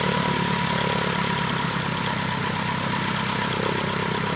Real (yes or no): yes